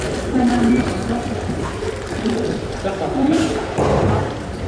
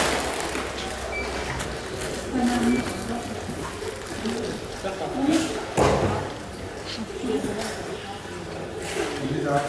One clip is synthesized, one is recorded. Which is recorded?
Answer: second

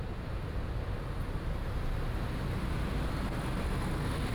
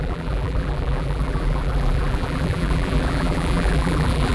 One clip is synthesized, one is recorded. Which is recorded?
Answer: first